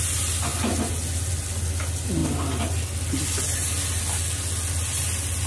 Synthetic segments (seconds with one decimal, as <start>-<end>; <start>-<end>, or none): none